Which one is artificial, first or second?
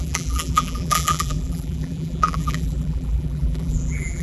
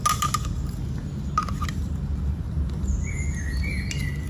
first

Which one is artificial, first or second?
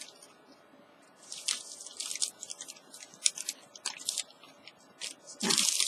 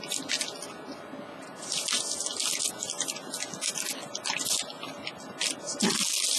first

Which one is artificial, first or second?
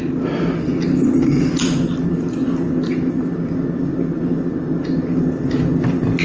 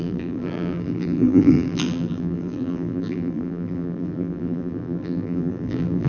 second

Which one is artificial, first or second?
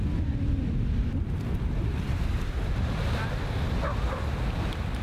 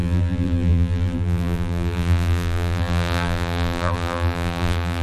second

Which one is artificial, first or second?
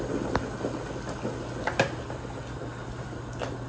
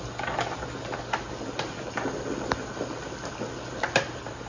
second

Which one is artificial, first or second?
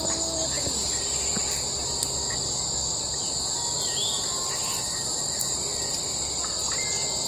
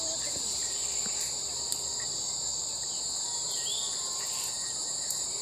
second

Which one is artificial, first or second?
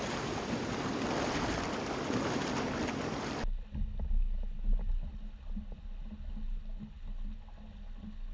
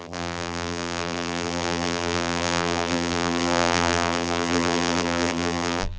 second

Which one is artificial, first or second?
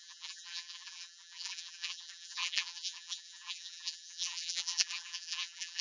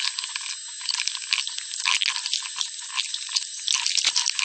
first